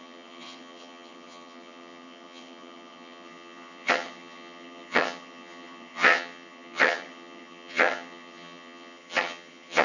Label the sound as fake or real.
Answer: fake